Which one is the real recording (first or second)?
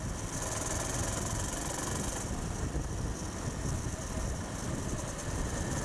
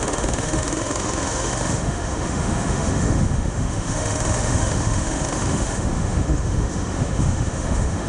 first